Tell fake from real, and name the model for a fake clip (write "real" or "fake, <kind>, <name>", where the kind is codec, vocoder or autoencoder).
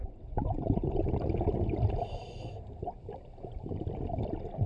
fake, vocoder, BigVGAN v2